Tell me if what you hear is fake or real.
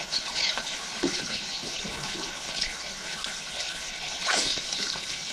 fake